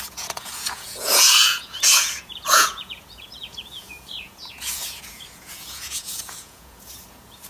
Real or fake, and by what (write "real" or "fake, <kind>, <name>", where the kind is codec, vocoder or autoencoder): fake, vocoder, Vocos